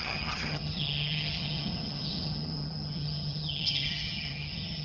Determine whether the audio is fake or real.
fake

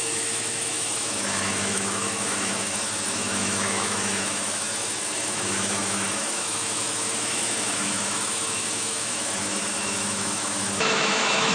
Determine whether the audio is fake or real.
fake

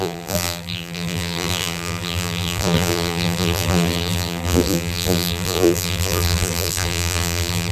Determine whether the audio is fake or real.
fake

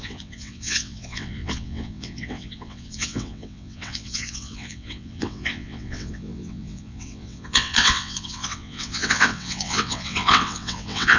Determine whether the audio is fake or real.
fake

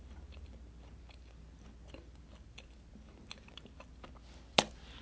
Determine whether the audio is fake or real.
real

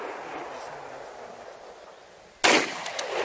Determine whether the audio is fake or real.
real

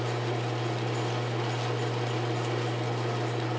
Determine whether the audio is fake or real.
real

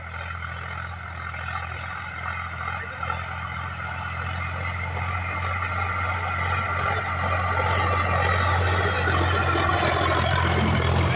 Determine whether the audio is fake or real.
real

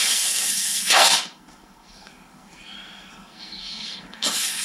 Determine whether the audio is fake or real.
fake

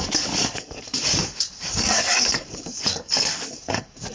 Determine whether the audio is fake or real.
fake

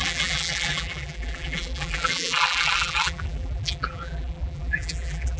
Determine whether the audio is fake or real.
fake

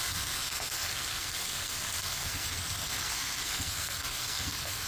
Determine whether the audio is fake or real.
fake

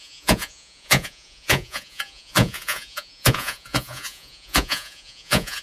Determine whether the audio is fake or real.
fake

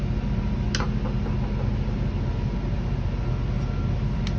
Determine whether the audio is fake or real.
real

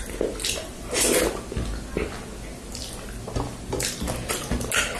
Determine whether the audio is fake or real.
real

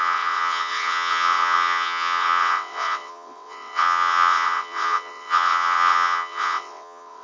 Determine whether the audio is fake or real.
fake